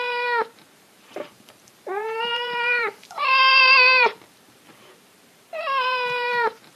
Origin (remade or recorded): remade